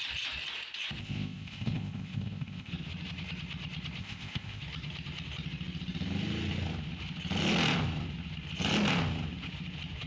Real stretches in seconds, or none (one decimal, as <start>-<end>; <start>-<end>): 0.0-1.0; 2.7-4.0; 4.6-10.1